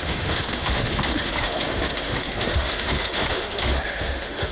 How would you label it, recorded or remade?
remade